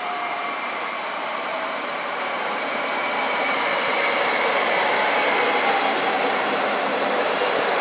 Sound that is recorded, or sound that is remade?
remade